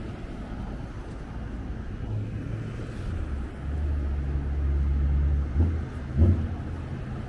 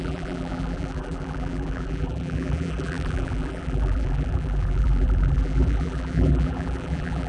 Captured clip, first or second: first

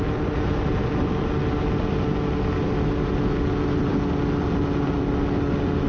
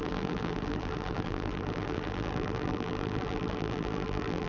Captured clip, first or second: first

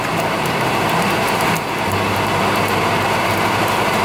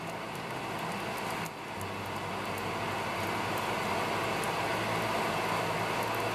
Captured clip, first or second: second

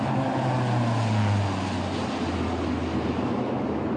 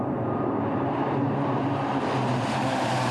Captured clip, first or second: first